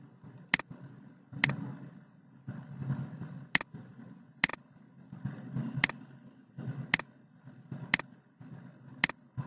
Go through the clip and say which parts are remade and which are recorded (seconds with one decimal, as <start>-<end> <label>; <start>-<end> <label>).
0.0-9.5 recorded